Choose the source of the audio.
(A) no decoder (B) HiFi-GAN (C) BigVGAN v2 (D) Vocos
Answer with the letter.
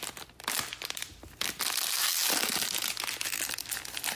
A